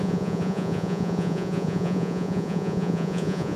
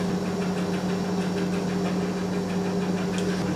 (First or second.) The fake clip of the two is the first